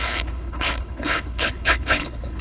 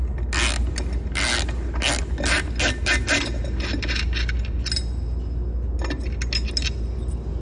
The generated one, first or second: first